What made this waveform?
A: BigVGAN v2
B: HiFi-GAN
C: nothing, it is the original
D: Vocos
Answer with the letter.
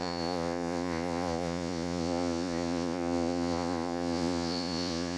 D